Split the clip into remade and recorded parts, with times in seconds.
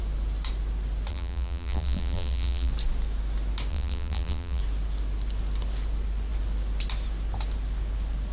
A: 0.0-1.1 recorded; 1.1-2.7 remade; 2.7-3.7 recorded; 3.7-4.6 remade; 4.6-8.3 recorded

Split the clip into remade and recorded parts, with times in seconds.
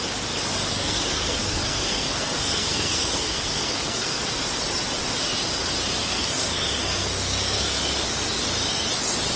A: 0.0-0.7 recorded; 0.7-4.2 remade; 4.2-6.0 recorded; 6.0-7.8 remade; 7.8-9.4 recorded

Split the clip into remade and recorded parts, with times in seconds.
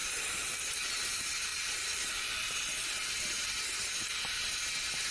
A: 0.0-1.5 recorded; 1.5-4.4 remade; 4.4-5.1 recorded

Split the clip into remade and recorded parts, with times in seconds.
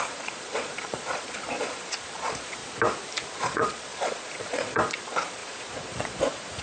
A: 0.0-2.6 remade; 2.6-3.3 recorded; 3.3-6.6 remade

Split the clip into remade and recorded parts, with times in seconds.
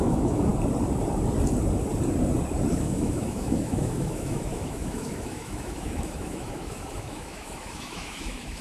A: 0.0-0.5 remade; 0.5-2.7 recorded; 2.7-8.6 remade